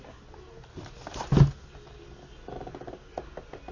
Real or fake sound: real